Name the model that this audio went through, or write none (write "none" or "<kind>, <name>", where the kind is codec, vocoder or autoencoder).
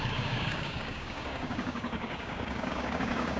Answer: codec, DAC